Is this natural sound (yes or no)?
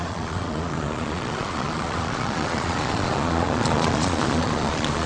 no